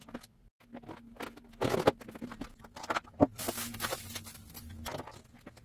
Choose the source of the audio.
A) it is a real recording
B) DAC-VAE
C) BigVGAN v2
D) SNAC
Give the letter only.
A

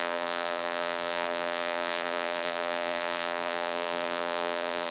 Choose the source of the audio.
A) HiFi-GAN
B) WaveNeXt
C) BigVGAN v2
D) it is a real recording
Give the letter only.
C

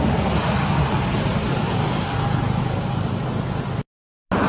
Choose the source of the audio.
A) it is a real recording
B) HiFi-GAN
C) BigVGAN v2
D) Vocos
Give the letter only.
A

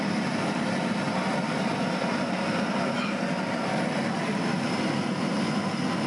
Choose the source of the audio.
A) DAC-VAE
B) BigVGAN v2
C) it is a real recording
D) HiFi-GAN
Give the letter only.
C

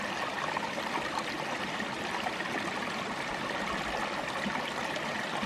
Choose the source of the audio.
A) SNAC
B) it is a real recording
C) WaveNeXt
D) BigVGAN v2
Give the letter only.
B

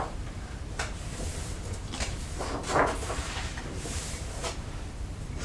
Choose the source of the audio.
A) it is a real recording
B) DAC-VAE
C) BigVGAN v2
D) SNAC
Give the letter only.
C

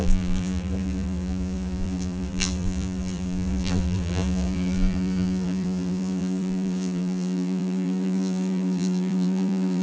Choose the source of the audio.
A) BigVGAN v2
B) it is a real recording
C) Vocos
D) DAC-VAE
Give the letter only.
A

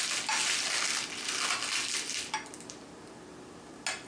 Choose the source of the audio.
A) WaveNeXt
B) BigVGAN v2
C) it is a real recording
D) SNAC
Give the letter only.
C